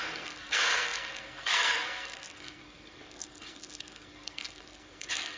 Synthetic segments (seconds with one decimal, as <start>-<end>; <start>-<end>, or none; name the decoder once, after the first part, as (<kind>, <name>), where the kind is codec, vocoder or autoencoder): 0.0-5.4 (codec, SNAC)